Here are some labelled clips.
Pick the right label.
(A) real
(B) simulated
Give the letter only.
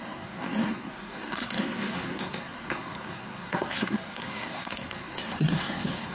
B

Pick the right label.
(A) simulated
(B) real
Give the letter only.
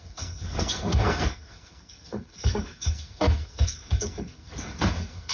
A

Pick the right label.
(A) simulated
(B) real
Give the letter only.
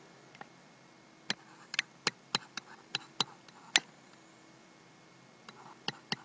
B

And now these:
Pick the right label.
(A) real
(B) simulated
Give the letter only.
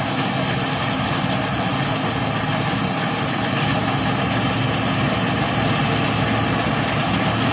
A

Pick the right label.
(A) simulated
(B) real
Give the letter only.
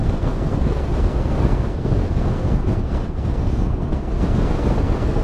A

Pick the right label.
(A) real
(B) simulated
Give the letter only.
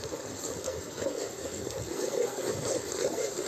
B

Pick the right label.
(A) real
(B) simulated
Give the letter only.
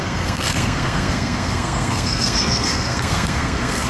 B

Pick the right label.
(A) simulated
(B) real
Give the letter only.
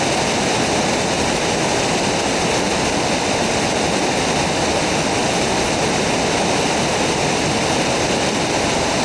B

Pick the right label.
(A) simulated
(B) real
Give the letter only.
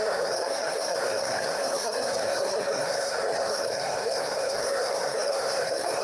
A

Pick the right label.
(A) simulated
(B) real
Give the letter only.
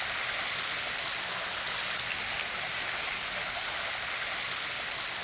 B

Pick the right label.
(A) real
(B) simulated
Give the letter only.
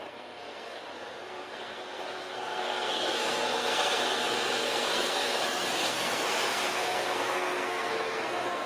B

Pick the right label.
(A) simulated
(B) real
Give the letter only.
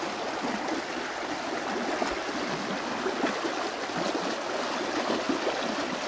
B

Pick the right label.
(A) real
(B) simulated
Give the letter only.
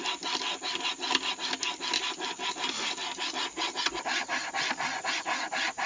A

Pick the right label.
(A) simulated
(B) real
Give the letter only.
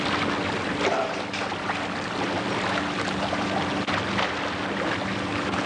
B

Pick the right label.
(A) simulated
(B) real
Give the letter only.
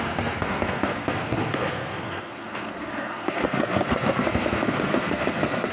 A